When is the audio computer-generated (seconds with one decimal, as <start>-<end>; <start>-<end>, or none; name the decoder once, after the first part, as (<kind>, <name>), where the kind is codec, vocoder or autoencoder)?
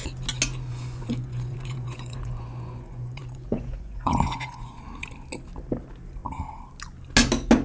0.7-4.8 (vocoder, Vocos)